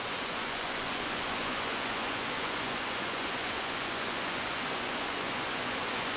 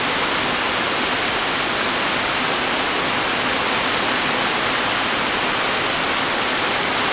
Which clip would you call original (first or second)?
second